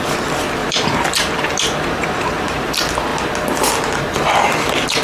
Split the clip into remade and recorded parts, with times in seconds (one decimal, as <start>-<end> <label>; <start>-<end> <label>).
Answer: 0.0-0.6 recorded; 0.6-2.7 remade; 2.7-5.0 recorded